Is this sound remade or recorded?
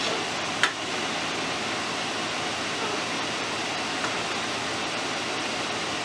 remade